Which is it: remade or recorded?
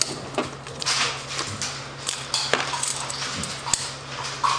recorded